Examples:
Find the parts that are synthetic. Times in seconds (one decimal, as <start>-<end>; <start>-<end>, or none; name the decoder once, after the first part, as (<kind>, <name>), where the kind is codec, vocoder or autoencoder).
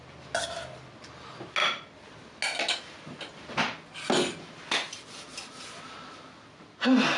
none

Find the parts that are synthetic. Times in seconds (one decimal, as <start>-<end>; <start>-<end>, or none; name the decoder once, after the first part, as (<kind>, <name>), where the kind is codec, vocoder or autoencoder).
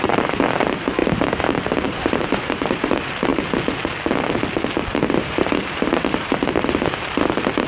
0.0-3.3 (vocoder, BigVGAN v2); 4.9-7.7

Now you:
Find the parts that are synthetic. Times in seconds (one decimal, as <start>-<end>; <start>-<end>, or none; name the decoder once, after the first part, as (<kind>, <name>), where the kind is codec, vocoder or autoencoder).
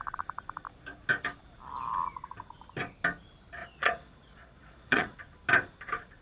3.6-5.2 (vocoder, Vocos)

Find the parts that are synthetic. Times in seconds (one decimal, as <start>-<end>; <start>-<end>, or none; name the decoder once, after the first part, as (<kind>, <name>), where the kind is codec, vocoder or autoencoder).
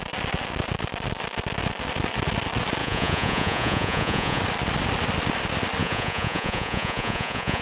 2.8-4.4 (vocoder, Vocos); 5.8-7.6